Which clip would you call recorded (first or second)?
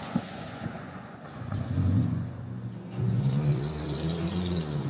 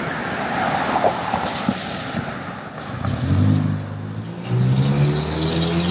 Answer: second